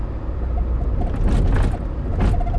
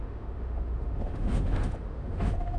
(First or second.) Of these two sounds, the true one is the first